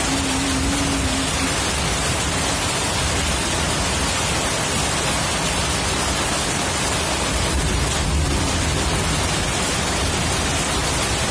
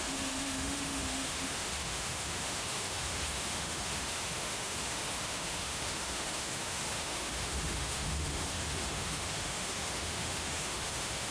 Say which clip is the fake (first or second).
second